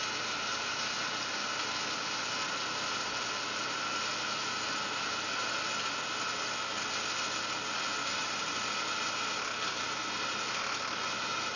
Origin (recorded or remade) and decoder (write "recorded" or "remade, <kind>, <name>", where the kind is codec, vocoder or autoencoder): recorded